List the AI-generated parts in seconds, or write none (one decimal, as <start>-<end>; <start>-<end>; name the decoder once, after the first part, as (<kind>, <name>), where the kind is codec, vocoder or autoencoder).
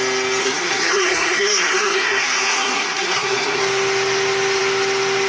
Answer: 0.4-3.6 (codec, SNAC)